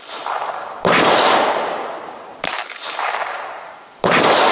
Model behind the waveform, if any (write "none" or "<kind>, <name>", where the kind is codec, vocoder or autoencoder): vocoder, BigVGAN v2